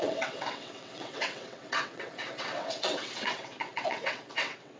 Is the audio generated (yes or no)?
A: yes